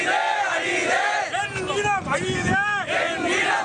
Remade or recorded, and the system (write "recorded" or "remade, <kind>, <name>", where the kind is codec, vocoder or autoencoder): recorded